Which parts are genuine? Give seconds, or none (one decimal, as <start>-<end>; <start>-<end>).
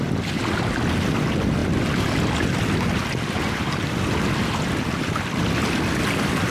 0.0-6.5